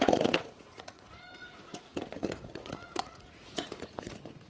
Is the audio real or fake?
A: fake